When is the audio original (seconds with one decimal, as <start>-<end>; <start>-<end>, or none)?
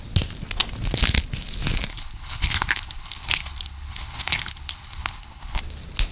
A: 0.0-1.9; 5.6-6.1